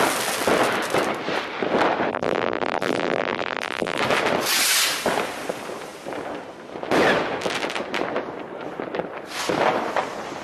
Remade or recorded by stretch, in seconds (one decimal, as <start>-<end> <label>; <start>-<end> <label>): 0.0-2.1 recorded; 2.1-4.0 remade; 4.0-10.4 recorded